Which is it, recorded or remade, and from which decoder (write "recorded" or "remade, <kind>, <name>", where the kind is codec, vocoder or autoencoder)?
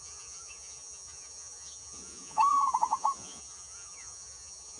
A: remade, vocoder, Vocos